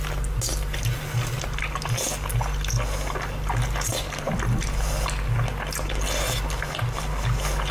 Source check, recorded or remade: recorded